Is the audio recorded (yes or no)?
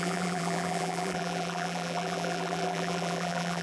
no